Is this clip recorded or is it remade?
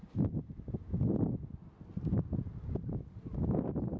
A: recorded